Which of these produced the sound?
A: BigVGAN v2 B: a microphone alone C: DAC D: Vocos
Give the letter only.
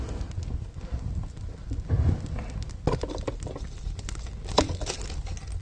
B